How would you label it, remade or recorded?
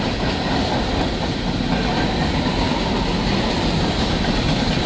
recorded